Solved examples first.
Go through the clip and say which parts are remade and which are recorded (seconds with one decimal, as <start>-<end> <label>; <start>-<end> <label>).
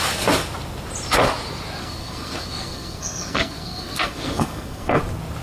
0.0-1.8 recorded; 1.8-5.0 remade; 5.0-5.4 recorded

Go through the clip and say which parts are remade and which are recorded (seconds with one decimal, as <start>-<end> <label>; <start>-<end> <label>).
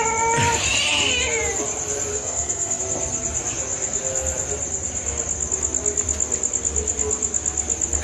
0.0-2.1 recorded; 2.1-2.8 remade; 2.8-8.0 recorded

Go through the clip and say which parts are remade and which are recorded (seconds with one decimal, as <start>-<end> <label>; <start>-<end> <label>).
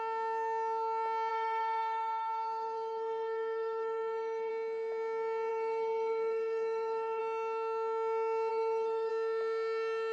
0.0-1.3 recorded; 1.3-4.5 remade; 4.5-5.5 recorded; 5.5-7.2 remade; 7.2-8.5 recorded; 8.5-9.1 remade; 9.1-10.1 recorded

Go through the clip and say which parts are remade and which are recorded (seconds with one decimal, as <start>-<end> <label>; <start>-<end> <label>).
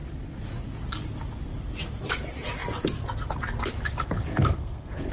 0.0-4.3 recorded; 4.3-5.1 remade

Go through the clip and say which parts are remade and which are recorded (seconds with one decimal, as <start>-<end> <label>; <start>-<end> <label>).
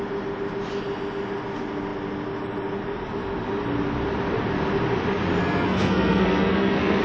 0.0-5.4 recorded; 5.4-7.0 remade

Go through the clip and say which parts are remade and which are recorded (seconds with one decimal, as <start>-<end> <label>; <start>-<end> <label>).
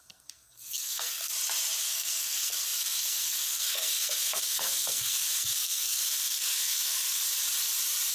0.0-1.3 remade; 1.3-1.8 recorded; 1.8-7.2 remade; 7.2-8.1 recorded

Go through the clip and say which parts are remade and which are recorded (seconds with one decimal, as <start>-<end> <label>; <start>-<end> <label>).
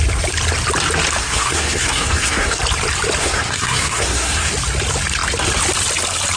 0.0-1.2 recorded; 1.2-2.6 remade; 2.6-3.2 recorded; 3.2-4.5 remade; 4.5-6.4 recorded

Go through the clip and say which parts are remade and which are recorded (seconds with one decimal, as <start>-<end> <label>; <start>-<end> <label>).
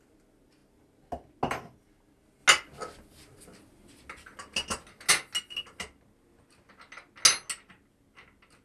0.0-8.6 recorded